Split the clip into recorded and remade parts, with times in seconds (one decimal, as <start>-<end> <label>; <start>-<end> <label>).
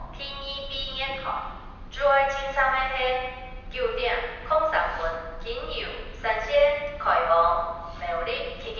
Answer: 0.0-8.8 recorded